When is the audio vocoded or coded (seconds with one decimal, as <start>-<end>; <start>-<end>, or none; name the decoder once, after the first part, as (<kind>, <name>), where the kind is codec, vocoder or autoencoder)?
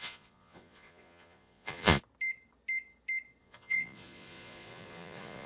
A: 0.0-2.0 (vocoder, Vocos); 3.4-5.5